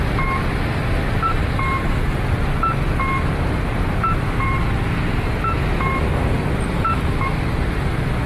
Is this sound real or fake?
real